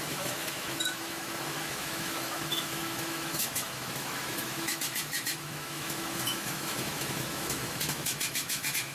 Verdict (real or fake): fake